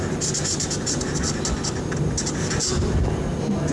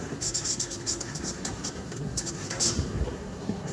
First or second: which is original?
first